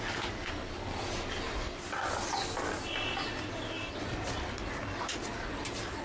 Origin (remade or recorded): recorded